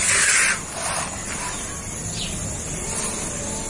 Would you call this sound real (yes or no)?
yes